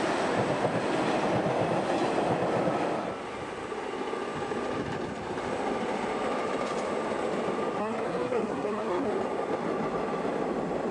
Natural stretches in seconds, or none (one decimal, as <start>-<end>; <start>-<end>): 0.0-7.8; 9.1-10.9